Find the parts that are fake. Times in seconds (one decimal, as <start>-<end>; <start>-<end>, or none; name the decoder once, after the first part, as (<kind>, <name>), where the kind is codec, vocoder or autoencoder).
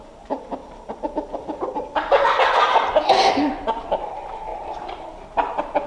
0.0-0.6 (vocoder, BigVGAN v2); 3.3-5.9